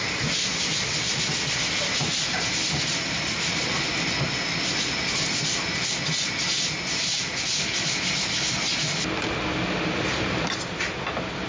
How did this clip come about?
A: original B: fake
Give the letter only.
A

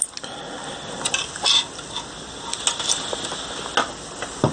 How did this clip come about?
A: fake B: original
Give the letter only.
B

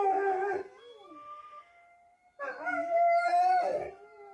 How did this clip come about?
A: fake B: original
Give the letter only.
B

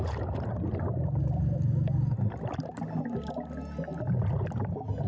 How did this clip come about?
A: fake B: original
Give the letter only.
B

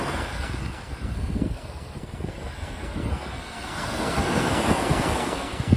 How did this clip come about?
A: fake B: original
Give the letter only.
A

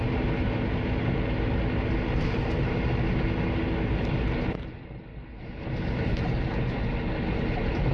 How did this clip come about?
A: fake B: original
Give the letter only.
B